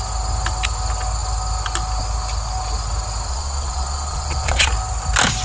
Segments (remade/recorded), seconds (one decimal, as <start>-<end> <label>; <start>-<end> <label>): 0.0-3.3 recorded; 3.3-4.7 remade; 4.7-5.4 recorded